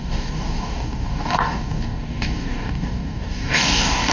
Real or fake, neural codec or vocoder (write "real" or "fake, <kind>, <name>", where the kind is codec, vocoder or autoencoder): fake, codec, DAC